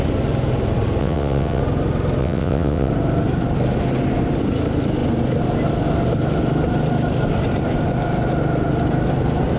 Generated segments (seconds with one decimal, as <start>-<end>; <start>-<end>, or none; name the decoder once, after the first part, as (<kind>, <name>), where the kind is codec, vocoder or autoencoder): 1.0-1.6 (vocoder, WaveNeXt); 2.2-2.9